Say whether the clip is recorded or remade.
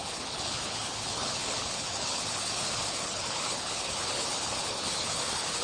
remade